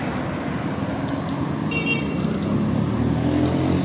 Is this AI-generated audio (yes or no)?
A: no